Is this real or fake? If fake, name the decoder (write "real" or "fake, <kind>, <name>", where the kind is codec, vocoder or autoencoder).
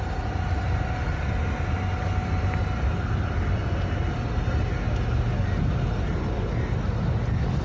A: real